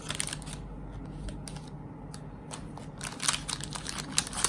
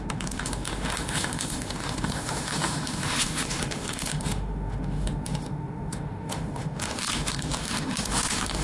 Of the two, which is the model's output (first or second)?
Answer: second